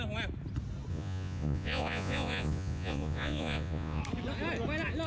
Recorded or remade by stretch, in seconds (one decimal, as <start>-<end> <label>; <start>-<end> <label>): 0.0-0.9 recorded; 0.9-4.0 remade; 4.0-5.1 recorded